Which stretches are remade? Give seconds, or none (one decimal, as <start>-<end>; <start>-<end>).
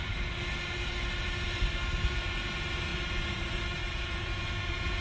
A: 3.8-5.0